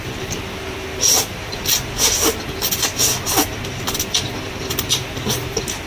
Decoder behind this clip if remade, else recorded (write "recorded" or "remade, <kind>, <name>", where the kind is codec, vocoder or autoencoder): recorded